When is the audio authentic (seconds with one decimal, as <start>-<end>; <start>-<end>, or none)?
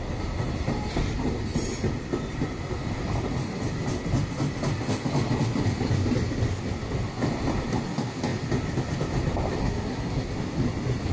0.0-9.6; 10.3-11.1